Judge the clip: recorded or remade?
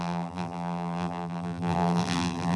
remade